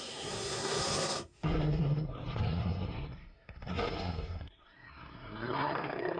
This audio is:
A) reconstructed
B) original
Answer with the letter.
A